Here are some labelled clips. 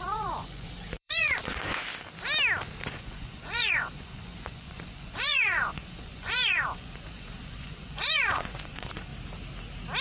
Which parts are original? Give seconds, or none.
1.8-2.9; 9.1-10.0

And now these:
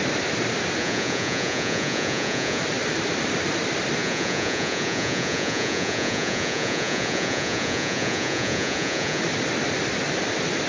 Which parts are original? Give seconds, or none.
0.0-0.8; 2.6-4.0; 9.2-10.7

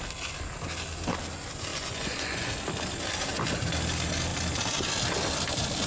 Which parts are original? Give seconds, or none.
0.0-1.7; 2.5-5.9